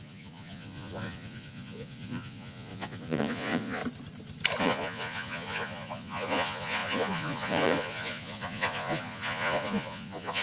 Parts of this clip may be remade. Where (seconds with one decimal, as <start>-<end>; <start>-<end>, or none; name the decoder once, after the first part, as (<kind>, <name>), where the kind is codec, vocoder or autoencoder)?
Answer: 0.0-3.8 (vocoder, Vocos); 4.6-10.4